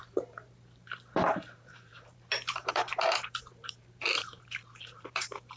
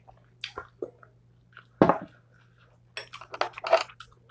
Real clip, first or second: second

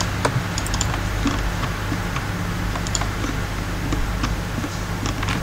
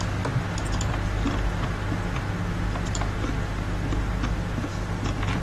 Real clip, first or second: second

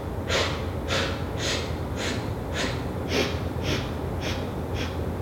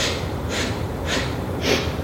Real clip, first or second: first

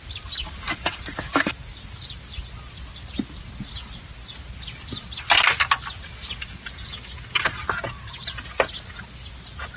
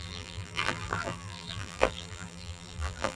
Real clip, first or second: first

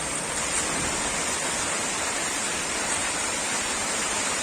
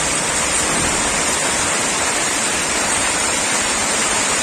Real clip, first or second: first